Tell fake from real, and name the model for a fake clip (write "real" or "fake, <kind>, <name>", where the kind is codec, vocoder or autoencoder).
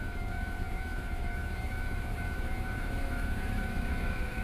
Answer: fake, autoencoder, DAC-VAE